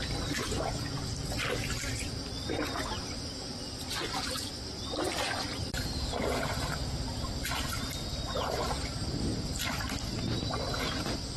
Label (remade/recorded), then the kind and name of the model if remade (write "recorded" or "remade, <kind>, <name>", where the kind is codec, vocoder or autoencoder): recorded